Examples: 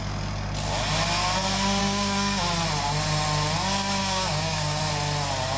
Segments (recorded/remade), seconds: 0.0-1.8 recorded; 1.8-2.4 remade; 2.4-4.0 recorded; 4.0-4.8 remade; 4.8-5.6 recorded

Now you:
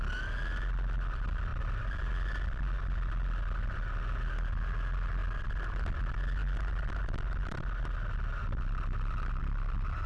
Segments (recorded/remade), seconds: 0.0-10.1 recorded

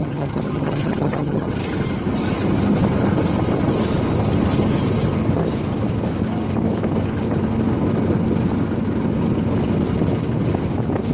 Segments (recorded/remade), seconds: 0.0-1.5 remade; 1.5-11.1 recorded

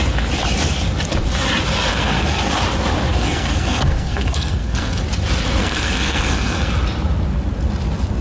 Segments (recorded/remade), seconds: 0.0-1.9 recorded; 1.9-2.5 remade; 2.5-3.1 recorded; 3.1-5.0 remade; 5.0-5.6 recorded; 5.6-6.7 remade; 6.7-8.2 recorded

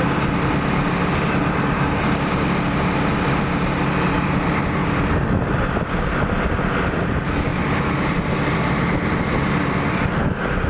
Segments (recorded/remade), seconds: 0.0-10.7 recorded

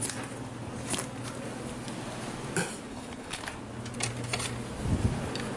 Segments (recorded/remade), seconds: 0.0-2.9 recorded; 2.9-3.4 remade; 3.4-5.6 recorded

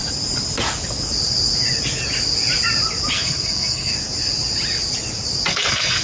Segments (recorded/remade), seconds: 0.0-3.1 recorded; 3.1-3.9 remade; 3.9-5.5 recorded; 5.5-6.0 remade